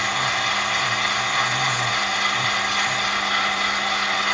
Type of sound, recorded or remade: recorded